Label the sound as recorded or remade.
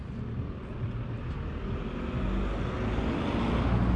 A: recorded